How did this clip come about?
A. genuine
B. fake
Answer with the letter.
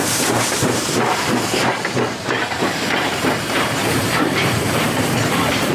B